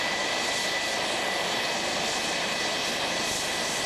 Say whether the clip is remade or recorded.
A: recorded